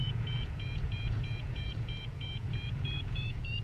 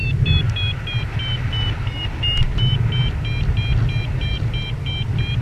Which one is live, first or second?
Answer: second